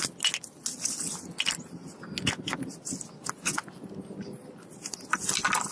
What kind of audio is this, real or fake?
real